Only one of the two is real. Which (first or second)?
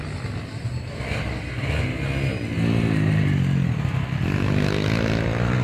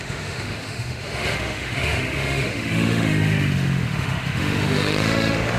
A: first